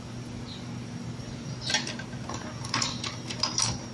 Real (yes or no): no